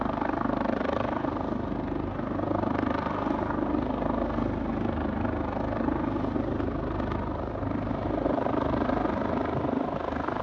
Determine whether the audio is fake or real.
real